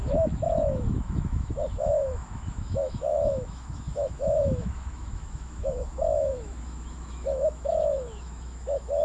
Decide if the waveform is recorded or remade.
remade